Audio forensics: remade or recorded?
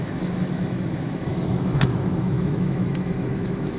remade